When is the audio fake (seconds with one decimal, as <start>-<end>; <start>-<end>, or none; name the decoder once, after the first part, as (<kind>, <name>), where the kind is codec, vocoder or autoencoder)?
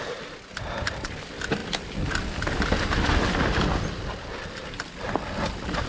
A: none